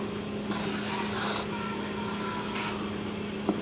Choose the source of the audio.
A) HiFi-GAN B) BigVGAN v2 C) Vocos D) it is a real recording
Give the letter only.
D